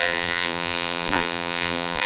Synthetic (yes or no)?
yes